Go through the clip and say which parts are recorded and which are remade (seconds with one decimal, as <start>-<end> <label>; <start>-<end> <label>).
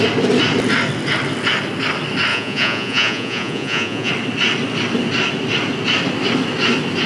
0.0-2.3 recorded; 2.3-4.1 remade; 4.1-7.1 recorded